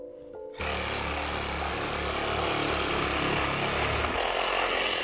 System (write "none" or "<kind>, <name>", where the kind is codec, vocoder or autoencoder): none